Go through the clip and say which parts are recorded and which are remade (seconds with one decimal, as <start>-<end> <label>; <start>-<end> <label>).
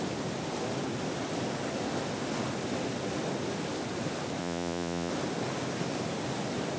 0.0-4.4 recorded; 4.4-5.1 remade; 5.1-6.8 recorded